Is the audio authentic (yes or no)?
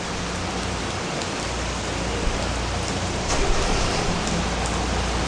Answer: yes